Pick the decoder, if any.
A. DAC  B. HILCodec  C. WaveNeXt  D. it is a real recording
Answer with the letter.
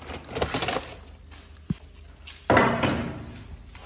D